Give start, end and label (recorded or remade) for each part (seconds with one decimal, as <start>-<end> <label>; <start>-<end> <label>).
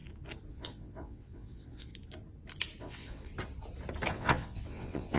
0.0-0.5 recorded; 0.5-1.9 remade; 1.9-2.8 recorded; 2.8-3.3 remade; 3.3-4.1 recorded; 4.1-5.2 remade